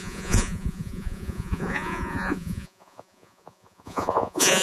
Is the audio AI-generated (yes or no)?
yes